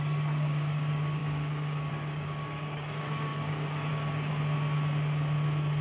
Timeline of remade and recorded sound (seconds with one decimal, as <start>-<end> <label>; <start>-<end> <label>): 0.0-4.3 remade; 4.3-5.8 recorded